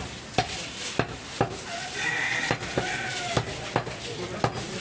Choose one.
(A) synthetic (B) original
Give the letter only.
B